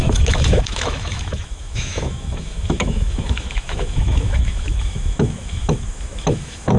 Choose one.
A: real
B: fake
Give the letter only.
B